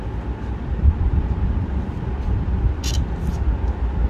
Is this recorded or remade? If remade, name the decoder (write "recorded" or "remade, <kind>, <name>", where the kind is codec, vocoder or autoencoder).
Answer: recorded